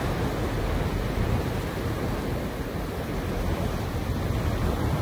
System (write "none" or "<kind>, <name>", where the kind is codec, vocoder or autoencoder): none